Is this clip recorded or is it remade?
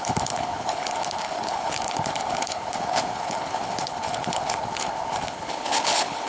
remade